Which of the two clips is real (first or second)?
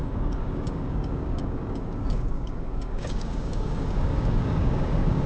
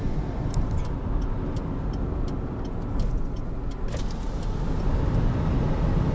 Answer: second